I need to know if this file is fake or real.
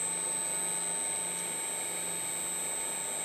real